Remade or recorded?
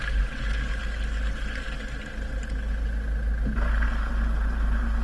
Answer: recorded